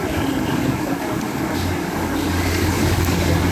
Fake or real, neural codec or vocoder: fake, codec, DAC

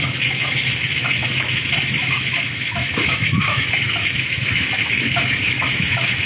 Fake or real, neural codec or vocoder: fake, autoencoder, DAC-VAE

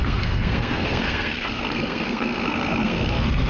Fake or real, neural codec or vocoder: fake, codec, SNAC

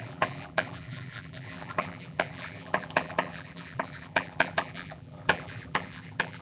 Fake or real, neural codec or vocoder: fake, vocoder, BigVGAN v2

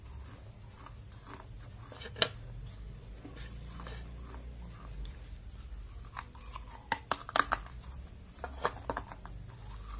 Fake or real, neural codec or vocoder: real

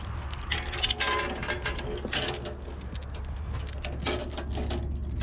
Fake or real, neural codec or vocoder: real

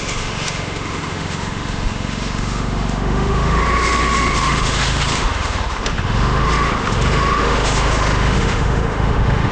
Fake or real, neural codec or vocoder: fake, autoencoder, DAC-VAE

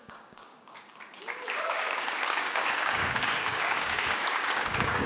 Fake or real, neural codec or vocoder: fake, codec, DAC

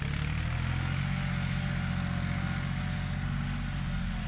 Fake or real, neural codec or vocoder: real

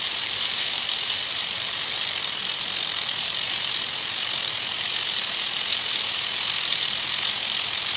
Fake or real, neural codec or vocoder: real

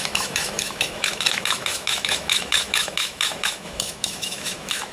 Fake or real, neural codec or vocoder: fake, autoencoder, DAC-VAE